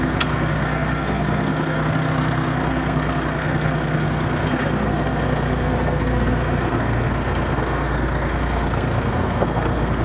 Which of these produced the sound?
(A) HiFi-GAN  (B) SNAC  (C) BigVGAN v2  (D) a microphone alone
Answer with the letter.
B